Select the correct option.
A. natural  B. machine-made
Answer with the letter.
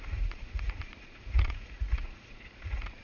B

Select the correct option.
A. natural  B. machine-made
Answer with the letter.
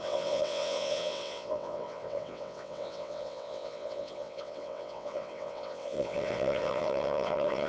B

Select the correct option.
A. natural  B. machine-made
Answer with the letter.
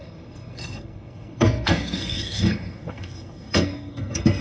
B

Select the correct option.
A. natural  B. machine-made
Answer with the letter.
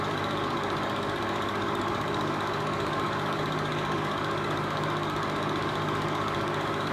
B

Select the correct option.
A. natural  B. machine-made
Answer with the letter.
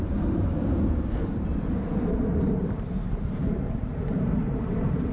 B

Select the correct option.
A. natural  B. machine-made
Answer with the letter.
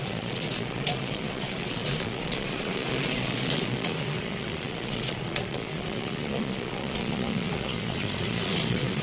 B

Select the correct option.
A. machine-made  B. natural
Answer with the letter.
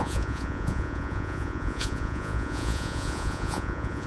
A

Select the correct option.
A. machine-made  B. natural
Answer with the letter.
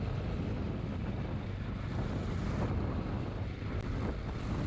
B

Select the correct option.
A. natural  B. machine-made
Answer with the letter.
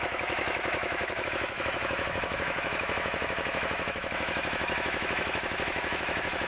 B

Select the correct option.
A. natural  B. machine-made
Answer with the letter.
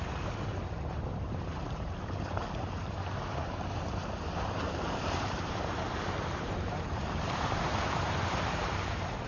B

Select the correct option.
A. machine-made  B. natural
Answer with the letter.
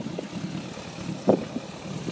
B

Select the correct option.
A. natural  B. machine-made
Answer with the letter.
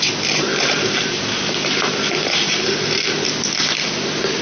A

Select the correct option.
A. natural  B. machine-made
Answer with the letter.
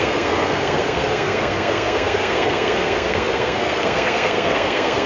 B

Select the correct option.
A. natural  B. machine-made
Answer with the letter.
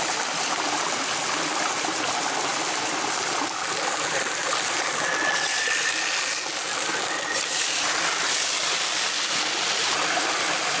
A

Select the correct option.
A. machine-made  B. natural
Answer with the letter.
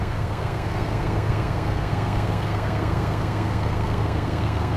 A